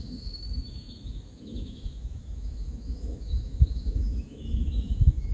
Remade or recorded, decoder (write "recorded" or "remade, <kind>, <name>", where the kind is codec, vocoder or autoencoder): remade, autoencoder, DAC-VAE